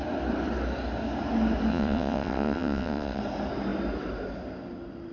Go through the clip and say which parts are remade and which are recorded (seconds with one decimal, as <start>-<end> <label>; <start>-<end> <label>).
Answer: 0.0-1.7 recorded; 1.7-3.2 remade; 3.2-5.1 recorded